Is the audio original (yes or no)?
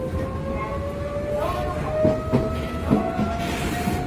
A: yes